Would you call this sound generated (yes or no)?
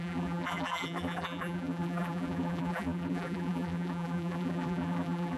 yes